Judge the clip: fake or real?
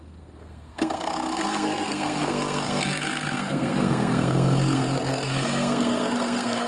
fake